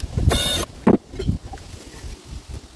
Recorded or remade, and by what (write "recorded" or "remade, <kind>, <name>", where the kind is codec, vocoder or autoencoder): recorded